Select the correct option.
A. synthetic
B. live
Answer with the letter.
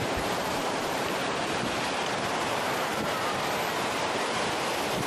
A